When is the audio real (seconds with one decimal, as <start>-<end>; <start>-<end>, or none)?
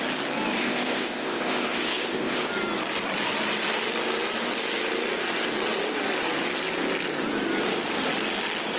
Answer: 0.0-0.6; 2.5-8.8